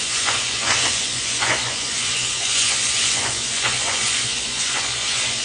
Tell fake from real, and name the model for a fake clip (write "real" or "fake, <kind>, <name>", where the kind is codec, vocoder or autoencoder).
fake, vocoder, Vocos